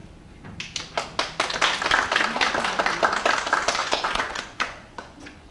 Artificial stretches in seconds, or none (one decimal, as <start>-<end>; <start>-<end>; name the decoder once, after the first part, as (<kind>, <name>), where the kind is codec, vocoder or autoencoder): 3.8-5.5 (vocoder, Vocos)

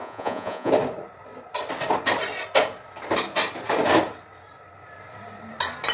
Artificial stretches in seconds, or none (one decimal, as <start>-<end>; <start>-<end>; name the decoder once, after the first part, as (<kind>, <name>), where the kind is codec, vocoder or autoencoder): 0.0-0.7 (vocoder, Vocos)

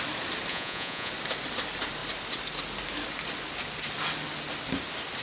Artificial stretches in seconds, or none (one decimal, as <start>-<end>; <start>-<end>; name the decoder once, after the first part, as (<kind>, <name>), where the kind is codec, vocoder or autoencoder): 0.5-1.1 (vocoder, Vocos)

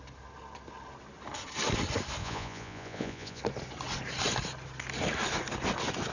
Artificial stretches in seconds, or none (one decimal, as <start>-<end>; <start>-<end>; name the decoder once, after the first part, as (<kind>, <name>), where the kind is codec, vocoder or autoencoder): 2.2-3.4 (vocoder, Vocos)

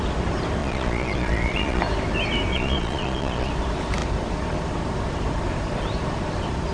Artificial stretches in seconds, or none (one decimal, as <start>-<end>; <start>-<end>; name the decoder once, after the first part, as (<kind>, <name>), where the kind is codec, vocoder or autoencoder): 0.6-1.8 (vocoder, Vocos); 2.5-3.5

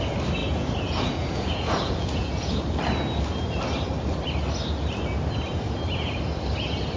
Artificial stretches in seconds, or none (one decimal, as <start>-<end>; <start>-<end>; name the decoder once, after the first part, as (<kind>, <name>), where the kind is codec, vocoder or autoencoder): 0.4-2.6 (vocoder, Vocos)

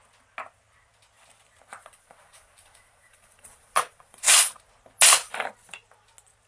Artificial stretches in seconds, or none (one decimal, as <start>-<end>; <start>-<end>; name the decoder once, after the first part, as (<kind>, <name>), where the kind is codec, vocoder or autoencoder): 1.8-4.6 (vocoder, Vocos)